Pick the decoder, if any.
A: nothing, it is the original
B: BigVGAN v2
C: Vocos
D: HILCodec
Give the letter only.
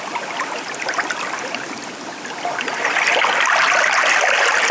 A